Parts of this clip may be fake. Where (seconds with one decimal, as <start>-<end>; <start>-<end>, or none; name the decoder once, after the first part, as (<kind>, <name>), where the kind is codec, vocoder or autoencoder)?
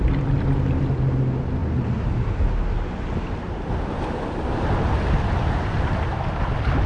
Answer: none